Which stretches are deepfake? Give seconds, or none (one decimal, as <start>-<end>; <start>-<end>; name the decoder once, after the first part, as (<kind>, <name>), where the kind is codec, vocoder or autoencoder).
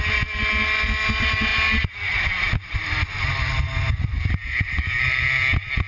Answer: none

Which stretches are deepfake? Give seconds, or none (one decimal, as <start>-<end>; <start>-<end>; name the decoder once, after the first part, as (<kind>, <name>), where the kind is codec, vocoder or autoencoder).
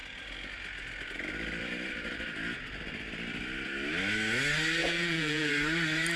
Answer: 4.8-5.5 (vocoder, Vocos)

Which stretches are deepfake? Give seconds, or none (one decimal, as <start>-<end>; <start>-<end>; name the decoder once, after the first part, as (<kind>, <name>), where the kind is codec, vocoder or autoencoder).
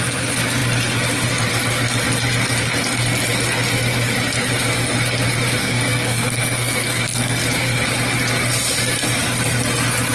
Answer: 5.6-7.4 (codec, SNAC)